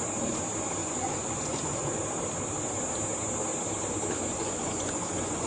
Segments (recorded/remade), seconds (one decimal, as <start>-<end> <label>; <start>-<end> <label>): 0.0-0.8 recorded; 0.8-2.0 remade; 2.0-4.3 recorded; 4.3-5.5 remade